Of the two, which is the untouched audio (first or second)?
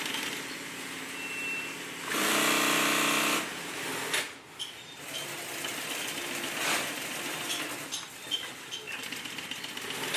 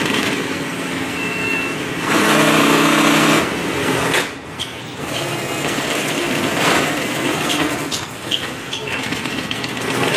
first